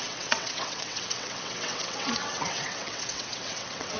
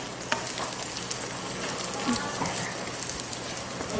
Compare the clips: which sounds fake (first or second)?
first